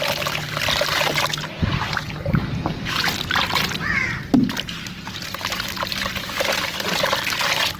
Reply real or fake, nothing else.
real